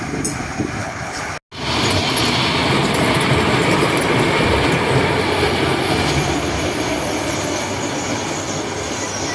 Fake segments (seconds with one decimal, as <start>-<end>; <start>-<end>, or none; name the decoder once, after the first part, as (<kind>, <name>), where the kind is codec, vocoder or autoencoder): 0.8-1.3 (codec, HILCodec)